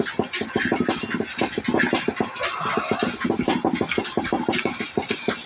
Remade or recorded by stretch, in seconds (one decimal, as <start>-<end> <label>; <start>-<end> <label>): 0.0-5.5 recorded